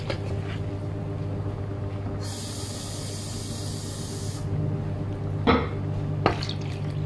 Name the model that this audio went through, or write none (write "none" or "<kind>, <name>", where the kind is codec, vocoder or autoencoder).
none